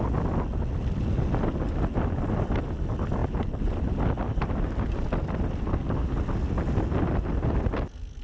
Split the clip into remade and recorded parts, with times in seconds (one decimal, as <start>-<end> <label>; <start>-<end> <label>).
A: 0.0-8.2 recorded